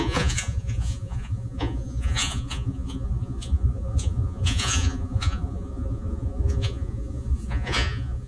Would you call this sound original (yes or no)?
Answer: no